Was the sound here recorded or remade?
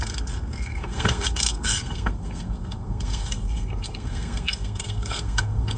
remade